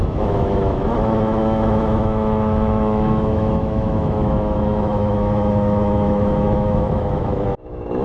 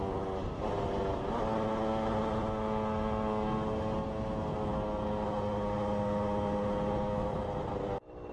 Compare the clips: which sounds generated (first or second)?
first